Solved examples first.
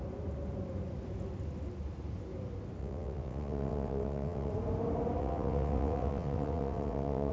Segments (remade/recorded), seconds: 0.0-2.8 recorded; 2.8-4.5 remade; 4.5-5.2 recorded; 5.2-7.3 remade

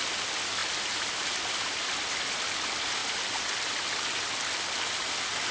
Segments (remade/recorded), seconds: 0.0-5.5 recorded

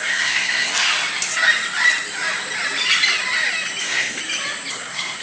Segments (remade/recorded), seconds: 0.0-0.7 remade; 0.7-3.8 recorded; 3.8-4.2 remade; 4.2-4.7 recorded; 4.7-5.2 remade

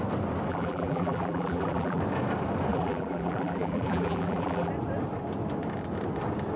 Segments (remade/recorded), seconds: 0.0-0.5 recorded; 0.5-2.0 remade; 2.0-2.7 recorded; 2.7-4.7 remade; 4.7-6.6 recorded

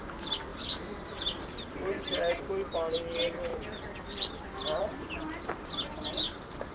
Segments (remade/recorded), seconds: 0.0-0.5 recorded; 0.5-2.4 remade; 2.4-3.5 recorded; 3.5-5.3 remade; 5.3-6.7 recorded

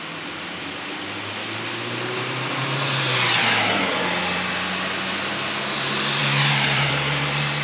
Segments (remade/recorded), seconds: 0.0-6.2 recorded; 6.2-6.9 remade; 6.9-7.6 recorded

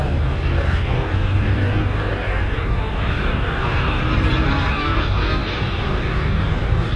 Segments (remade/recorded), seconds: 0.0-4.0 remade; 4.0-4.7 recorded; 4.7-7.0 remade

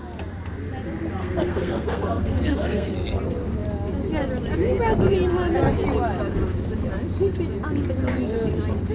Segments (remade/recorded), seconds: 0.0-1.2 recorded; 1.2-3.2 remade; 3.2-8.9 recorded